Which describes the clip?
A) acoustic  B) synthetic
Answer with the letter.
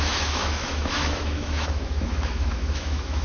B